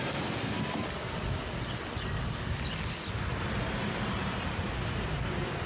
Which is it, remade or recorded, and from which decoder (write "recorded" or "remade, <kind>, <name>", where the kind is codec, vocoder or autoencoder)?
recorded